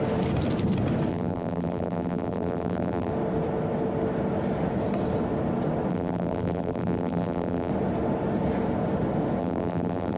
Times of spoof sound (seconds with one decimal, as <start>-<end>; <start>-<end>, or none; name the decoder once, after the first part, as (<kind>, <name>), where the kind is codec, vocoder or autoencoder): 1.1-3.1 (vocoder, BigVGAN v2); 5.9-7.7; 9.4-10.2

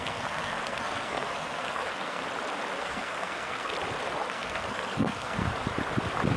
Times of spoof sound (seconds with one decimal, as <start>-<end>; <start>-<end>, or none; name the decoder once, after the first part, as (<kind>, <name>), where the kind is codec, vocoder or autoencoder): 0.0-2.2 (codec, SNAC); 2.8-3.7; 4.3-5.5

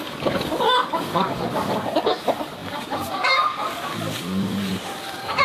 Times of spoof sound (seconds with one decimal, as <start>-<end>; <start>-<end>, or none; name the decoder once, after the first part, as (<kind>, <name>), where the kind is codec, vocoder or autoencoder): 0.0-5.4 (codec, DAC)

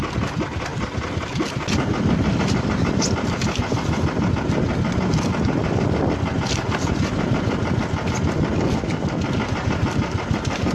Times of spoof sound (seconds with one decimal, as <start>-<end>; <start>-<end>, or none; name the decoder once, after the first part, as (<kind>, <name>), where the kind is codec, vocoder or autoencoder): 0.7-4.3 (vocoder, BigVGAN v2)

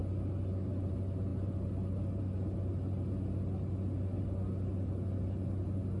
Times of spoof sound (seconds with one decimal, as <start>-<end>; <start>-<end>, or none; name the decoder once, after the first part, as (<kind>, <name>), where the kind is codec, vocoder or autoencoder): none